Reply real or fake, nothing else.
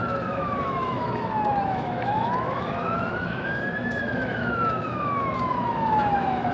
fake